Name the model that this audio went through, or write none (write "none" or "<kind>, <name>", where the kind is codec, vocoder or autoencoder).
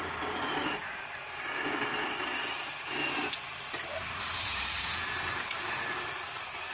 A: none